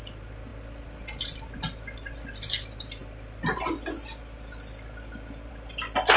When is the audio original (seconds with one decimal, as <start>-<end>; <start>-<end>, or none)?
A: 0.0-6.2